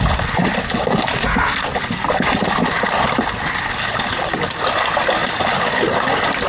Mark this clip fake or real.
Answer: real